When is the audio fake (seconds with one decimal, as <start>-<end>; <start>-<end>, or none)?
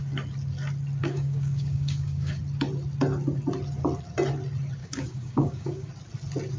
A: 1.0-2.4; 4.8-5.9